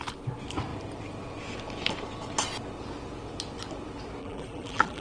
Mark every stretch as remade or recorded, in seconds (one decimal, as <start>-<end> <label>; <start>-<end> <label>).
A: 0.0-4.2 recorded; 4.2-5.0 remade